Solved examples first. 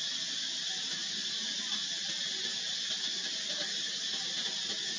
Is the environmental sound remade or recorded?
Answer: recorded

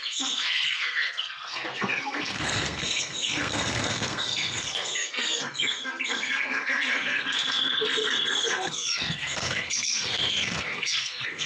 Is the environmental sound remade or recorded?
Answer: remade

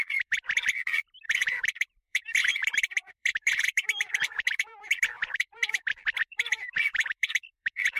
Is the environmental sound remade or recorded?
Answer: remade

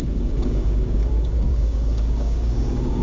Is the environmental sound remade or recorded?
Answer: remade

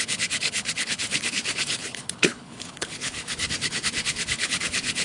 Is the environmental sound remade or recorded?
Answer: remade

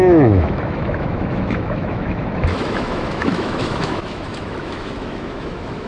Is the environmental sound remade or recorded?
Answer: remade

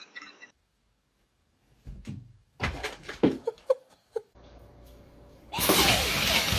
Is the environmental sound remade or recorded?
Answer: remade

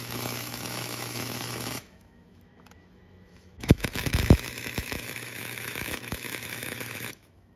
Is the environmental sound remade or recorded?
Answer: remade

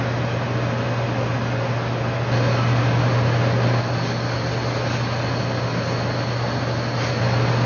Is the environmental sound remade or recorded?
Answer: recorded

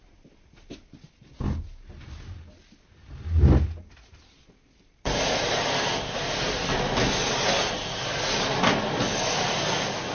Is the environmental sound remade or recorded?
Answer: recorded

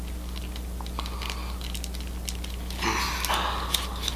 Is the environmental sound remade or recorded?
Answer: recorded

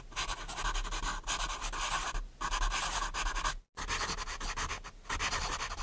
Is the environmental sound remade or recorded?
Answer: recorded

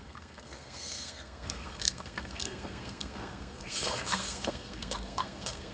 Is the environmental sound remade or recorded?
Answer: remade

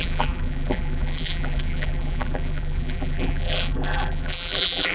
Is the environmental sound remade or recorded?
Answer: remade